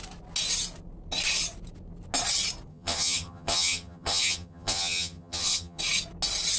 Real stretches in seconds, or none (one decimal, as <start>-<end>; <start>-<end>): 0.0-2.7; 5.8-6.6